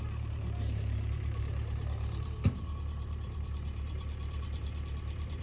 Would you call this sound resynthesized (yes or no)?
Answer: yes